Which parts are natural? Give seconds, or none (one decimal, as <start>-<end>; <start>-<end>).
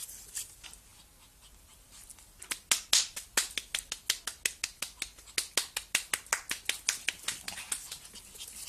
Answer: 0.0-8.7